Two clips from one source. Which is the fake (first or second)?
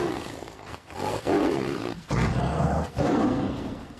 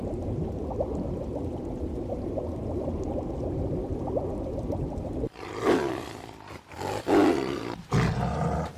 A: first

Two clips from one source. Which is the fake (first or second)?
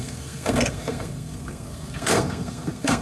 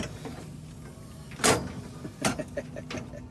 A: first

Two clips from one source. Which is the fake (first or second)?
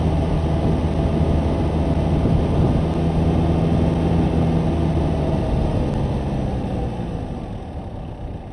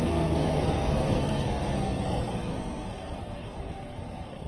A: second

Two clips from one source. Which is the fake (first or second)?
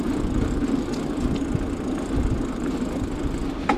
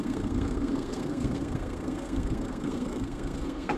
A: second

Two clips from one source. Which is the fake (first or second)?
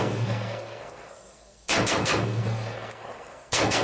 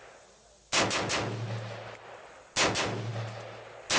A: first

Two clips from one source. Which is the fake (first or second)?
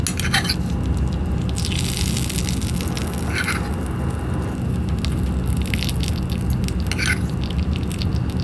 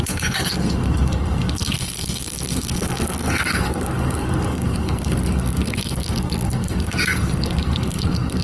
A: second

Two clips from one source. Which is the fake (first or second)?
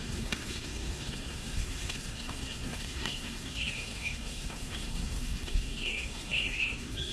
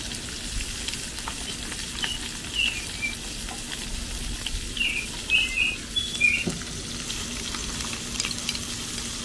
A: first